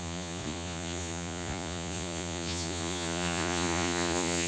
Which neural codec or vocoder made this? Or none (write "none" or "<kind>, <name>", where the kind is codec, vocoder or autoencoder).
vocoder, Vocos